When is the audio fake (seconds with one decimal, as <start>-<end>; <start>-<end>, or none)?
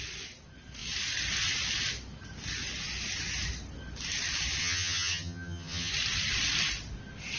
4.6-5.9